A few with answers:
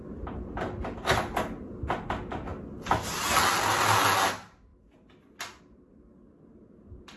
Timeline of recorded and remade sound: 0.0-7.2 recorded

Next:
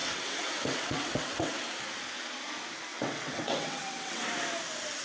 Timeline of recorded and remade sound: 0.0-1.7 remade; 1.7-2.9 recorded; 2.9-4.3 remade; 4.3-5.0 recorded

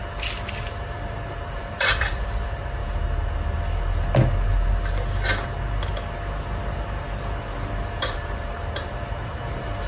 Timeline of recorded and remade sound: 0.0-0.5 recorded; 0.5-2.8 remade; 2.8-8.0 recorded; 8.0-9.9 remade